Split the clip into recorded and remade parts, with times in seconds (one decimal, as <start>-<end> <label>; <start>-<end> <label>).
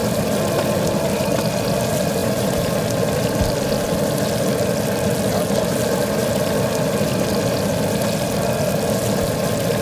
0.0-2.2 recorded; 2.2-2.7 remade; 2.7-9.8 recorded